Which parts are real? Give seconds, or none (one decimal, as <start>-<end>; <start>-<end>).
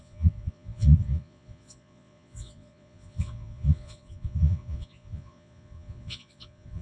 none